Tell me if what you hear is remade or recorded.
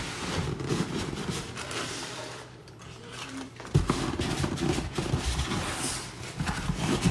remade